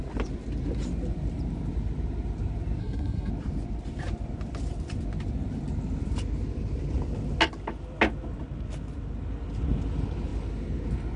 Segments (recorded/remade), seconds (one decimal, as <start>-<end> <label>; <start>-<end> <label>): 0.0-2.8 recorded; 2.8-3.3 remade; 3.3-11.2 recorded